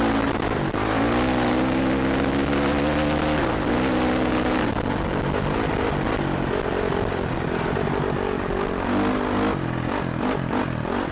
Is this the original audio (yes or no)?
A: yes